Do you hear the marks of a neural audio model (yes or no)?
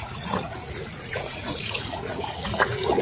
yes